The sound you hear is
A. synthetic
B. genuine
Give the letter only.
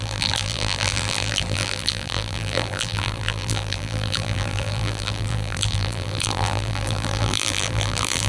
A